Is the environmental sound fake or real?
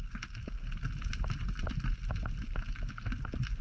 real